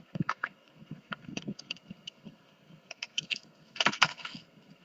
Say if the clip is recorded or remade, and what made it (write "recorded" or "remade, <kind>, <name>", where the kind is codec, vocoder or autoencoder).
remade, codec, SNAC